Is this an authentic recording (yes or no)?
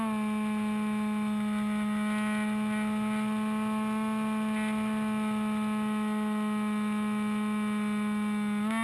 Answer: yes